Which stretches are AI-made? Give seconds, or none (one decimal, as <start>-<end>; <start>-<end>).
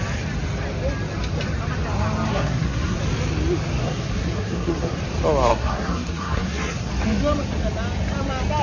2.3-3.0; 3.8-5.0; 5.5-6.9